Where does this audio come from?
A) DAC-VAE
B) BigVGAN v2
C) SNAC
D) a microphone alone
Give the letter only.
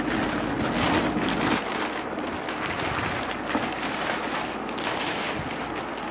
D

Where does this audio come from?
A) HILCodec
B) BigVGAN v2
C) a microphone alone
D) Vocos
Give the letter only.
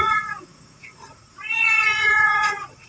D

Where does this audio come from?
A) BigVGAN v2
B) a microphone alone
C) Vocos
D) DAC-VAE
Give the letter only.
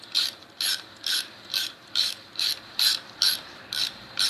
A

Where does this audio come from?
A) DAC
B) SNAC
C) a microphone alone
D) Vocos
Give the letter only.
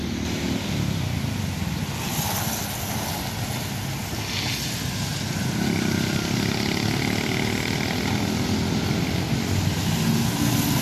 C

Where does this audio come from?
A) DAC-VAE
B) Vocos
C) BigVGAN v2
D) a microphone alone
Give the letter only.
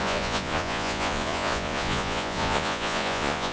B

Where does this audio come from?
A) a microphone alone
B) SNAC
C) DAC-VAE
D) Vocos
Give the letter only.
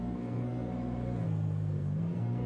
B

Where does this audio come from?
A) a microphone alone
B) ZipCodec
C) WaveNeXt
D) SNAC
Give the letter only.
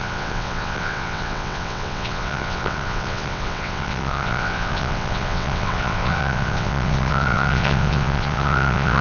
C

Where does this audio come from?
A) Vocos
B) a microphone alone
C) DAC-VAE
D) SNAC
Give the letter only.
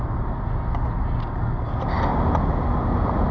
B